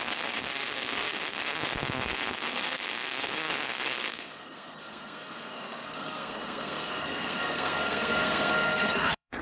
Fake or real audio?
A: fake